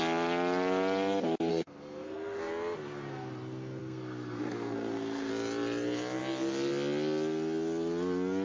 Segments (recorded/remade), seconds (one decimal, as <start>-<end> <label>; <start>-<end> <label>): 0.0-1.5 recorded; 1.5-2.4 remade; 2.4-3.8 recorded; 3.8-5.3 remade; 5.3-8.4 recorded